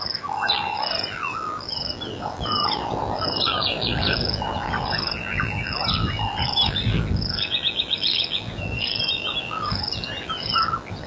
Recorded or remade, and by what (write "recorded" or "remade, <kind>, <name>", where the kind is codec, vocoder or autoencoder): remade, vocoder, BigVGAN v2